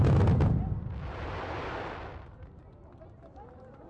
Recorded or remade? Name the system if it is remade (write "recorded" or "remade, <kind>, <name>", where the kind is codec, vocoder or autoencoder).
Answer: recorded